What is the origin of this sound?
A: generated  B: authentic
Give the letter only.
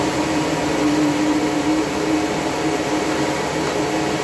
B